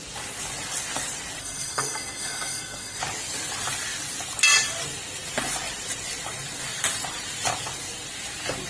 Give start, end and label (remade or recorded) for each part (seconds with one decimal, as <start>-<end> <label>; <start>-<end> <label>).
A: 0.0-1.4 recorded; 1.4-3.0 remade; 3.0-8.7 recorded